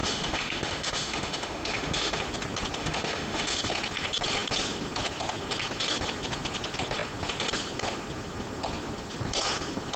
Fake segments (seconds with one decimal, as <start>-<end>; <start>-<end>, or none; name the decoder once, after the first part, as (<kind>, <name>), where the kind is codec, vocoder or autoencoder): 0.0-2.2 (autoencoder, DAC-VAE); 2.8-3.7